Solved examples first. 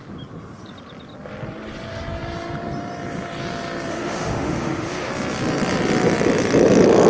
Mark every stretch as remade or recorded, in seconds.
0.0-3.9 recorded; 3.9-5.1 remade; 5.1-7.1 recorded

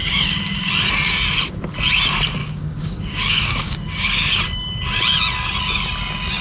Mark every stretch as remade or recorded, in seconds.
0.0-0.7 remade; 0.7-2.4 recorded; 2.4-4.4 remade; 4.4-6.4 recorded